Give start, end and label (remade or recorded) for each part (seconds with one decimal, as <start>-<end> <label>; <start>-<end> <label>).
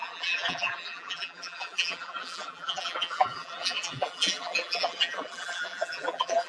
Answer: 0.0-6.5 remade